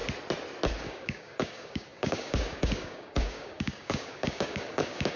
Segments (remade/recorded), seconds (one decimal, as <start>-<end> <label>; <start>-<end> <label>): 0.0-0.8 recorded; 0.8-5.2 remade